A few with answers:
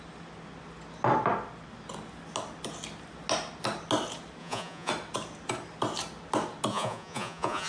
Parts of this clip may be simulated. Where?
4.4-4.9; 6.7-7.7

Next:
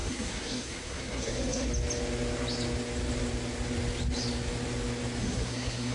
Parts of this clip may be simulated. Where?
0.0-1.7; 5.2-5.9

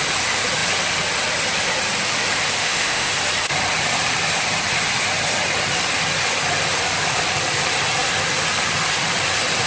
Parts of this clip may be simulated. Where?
2.6-3.1